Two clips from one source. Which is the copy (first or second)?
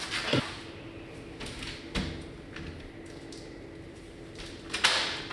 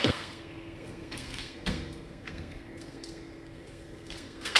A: second